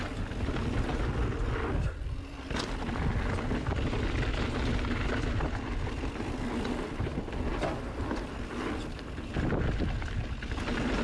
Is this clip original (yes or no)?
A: yes